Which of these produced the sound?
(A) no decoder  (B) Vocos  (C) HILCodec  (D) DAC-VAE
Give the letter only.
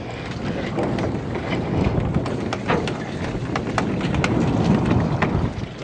A